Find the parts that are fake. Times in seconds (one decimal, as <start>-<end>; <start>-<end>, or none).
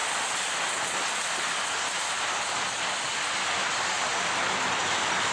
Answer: none